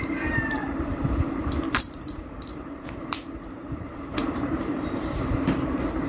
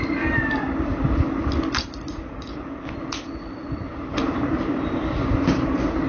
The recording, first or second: second